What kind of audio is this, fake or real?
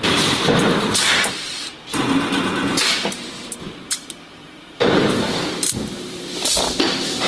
fake